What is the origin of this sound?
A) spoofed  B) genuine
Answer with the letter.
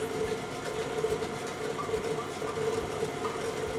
B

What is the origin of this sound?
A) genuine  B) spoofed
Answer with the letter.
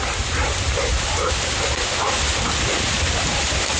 A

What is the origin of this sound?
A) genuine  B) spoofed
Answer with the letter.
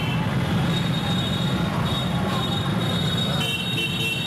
A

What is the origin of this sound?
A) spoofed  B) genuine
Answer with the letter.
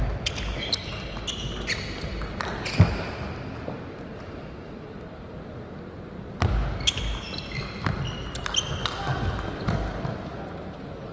B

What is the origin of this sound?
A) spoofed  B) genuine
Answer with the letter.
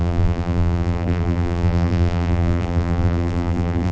A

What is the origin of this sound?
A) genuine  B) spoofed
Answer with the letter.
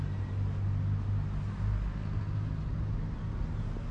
A